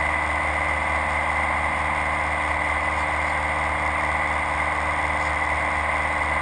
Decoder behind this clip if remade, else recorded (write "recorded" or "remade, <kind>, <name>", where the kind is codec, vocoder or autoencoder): recorded